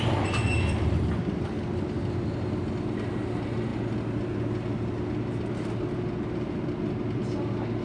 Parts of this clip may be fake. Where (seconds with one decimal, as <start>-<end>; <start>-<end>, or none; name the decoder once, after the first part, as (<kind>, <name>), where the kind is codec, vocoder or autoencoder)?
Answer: none